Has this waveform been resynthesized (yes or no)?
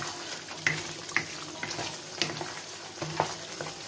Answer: no